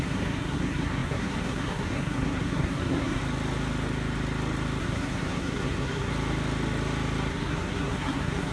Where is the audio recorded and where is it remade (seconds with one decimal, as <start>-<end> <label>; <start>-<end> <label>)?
0.0-3.2 remade; 3.2-4.8 recorded; 4.8-6.1 remade; 6.1-7.3 recorded; 7.3-8.5 remade